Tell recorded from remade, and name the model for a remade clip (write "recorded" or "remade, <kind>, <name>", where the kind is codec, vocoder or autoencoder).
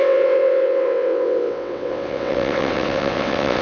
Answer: remade, vocoder, WaveNeXt